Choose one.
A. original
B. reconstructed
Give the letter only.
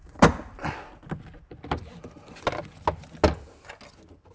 A